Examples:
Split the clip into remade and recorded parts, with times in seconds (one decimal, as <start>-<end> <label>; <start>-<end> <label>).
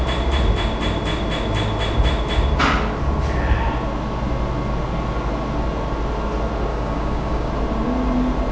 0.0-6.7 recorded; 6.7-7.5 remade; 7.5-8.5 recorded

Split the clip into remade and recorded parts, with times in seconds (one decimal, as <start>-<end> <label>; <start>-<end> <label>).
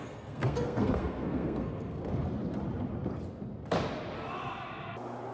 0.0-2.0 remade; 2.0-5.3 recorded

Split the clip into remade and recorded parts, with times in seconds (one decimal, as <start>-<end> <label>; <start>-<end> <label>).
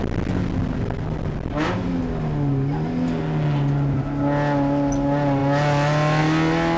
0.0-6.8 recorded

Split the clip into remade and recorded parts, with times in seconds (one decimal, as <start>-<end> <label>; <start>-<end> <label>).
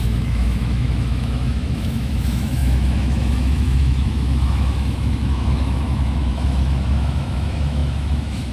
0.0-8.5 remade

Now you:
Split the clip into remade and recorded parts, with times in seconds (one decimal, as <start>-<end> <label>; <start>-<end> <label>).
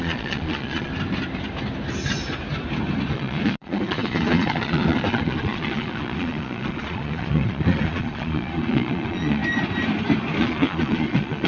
0.0-0.9 remade; 0.9-3.1 recorded; 3.1-9.4 remade; 9.4-10.4 recorded; 10.4-11.5 remade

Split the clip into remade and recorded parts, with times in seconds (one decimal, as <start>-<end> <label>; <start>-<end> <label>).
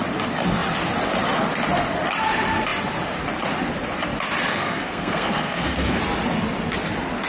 0.0-4.5 recorded; 4.5-6.0 remade; 6.0-7.3 recorded